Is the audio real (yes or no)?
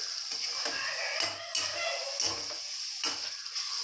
yes